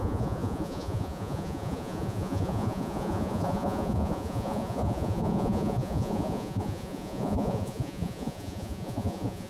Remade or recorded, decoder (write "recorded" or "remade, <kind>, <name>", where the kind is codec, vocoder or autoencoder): remade, vocoder, Vocos